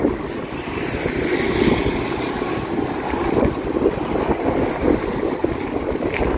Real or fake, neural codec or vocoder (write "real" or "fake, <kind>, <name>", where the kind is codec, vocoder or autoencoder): real